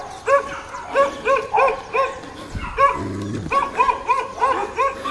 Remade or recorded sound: recorded